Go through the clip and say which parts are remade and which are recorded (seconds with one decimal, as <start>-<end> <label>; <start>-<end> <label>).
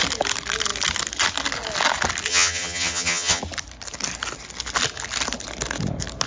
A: 0.0-2.3 recorded; 2.3-3.4 remade; 3.4-6.3 recorded